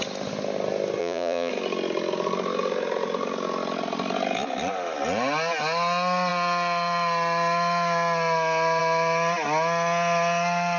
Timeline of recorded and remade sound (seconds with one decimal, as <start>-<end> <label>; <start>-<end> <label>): 0.0-1.0 recorded; 1.0-1.5 remade; 1.5-10.8 recorded